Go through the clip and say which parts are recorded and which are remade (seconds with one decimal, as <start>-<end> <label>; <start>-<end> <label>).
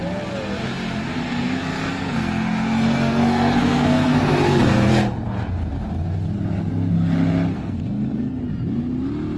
0.0-1.2 recorded; 1.2-4.9 remade; 4.9-7.5 recorded; 7.5-8.4 remade; 8.4-9.4 recorded